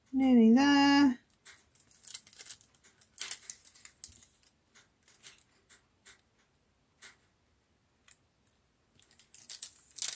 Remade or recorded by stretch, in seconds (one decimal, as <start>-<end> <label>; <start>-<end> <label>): 0.0-10.1 recorded